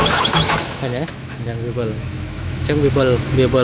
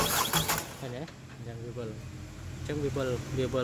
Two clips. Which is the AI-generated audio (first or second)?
first